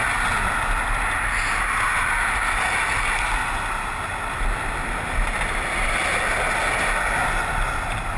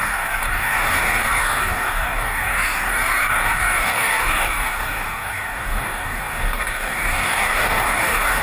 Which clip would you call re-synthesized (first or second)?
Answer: second